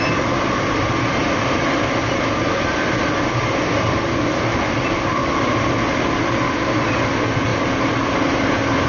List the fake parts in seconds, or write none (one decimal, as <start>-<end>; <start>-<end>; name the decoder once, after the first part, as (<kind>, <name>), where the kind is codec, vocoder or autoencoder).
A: 5.2-5.8 (vocoder, BigVGAN v2); 7.5-8.0